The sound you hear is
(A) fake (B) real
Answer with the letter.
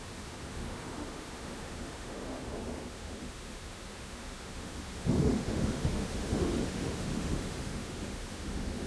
A